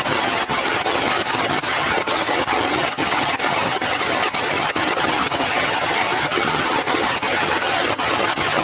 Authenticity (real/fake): fake